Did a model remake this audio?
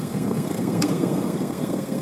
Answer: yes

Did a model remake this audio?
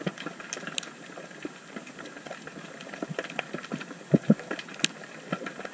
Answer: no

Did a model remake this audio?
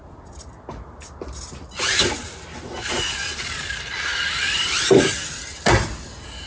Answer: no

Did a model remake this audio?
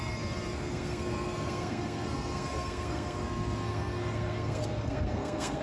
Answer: yes